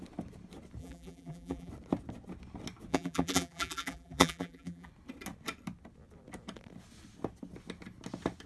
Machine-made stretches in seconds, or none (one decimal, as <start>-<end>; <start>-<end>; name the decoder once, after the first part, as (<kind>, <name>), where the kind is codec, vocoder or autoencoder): 0.8-1.7 (vocoder, BigVGAN v2); 2.9-4.9